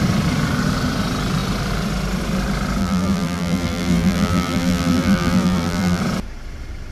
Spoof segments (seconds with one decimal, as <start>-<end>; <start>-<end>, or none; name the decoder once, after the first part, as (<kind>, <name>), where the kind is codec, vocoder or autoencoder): 2.8-6.0 (vocoder, BigVGAN v2)